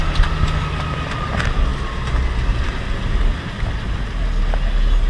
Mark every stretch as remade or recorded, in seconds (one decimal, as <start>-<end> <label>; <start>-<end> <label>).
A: 0.0-5.1 recorded